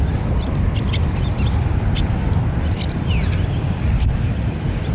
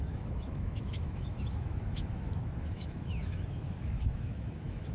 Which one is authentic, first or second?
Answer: first